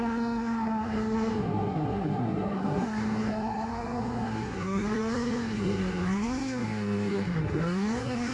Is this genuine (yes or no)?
no